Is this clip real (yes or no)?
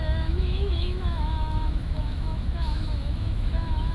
no